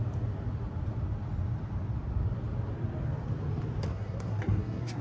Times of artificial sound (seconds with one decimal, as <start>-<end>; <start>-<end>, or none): 3.9-5.0